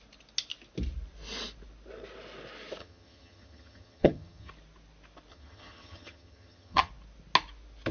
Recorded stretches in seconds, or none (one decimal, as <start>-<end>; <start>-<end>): 0.0-2.8; 4.5-5.3; 6.9-7.9